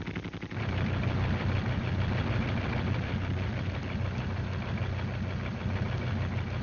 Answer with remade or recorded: recorded